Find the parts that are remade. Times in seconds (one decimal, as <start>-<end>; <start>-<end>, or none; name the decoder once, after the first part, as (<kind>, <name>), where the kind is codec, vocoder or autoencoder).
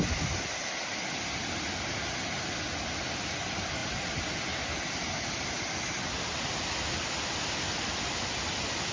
none